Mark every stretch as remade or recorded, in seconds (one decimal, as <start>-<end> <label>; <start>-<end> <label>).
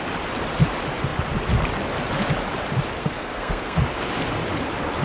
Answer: 0.0-3.0 recorded; 3.0-3.8 remade; 3.8-5.0 recorded